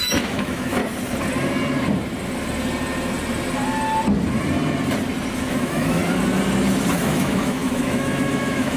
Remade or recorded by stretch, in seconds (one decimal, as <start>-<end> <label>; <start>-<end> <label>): 0.0-0.8 remade; 0.8-5.5 recorded; 5.5-6.0 remade; 6.0-6.9 recorded; 6.9-8.8 remade